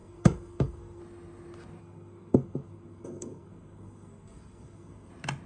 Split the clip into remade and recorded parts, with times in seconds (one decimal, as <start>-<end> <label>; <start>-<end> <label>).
0.0-1.0 remade; 1.0-1.8 recorded; 1.8-5.1 remade; 5.1-5.5 recorded